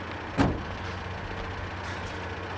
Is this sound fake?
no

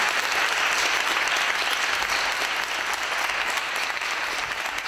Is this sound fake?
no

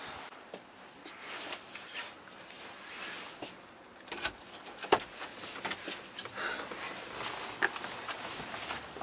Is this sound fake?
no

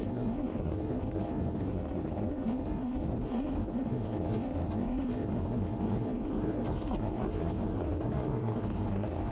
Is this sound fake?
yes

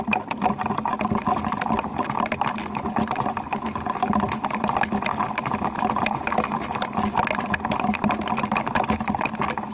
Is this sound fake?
no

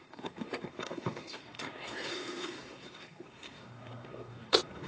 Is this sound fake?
yes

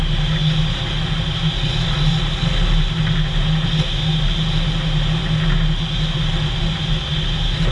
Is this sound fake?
no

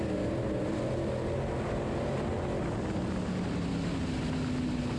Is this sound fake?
no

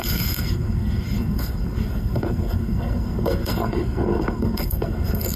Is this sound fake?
yes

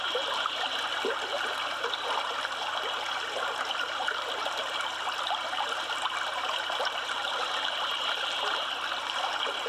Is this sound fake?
no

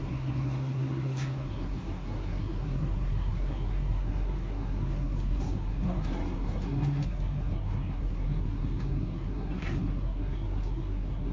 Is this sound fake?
yes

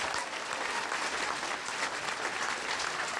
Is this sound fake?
no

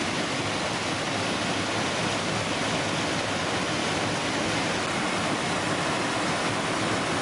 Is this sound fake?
no